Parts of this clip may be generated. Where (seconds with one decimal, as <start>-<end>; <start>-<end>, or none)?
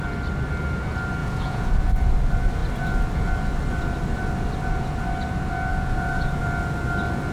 1.2-1.7; 5.7-6.4